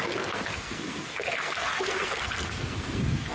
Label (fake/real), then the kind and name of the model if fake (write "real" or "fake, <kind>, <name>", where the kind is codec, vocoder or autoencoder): fake, codec, SNAC